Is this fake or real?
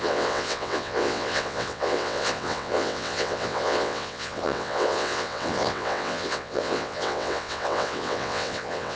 fake